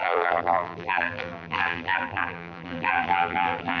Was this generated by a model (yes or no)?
yes